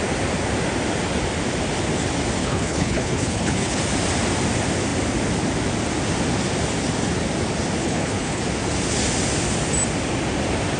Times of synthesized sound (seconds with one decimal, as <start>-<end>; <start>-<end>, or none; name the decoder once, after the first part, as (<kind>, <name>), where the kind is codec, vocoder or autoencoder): 2.4-3.8 (codec, HILCodec); 7.8-8.4